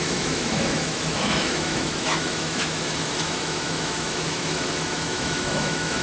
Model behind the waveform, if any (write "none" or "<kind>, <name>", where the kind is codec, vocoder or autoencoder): autoencoder, DAC-VAE